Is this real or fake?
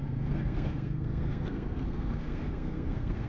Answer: fake